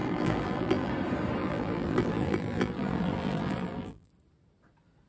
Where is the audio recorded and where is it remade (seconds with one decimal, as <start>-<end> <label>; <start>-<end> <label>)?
0.0-0.9 remade; 0.9-1.4 recorded; 1.4-4.1 remade; 4.1-5.1 recorded